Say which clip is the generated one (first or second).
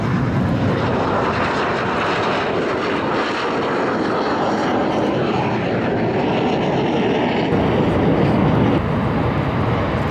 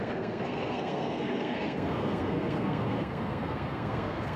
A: second